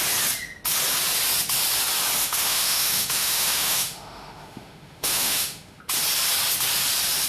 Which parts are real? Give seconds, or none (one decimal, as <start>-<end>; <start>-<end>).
0.0-2.2; 5.8-7.3